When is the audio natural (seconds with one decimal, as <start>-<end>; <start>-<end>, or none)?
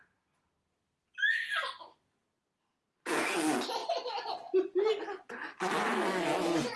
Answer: 0.0-6.8